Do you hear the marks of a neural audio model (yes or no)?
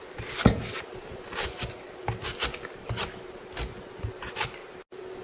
no